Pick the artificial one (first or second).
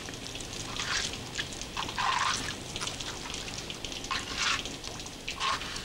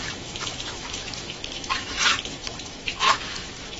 second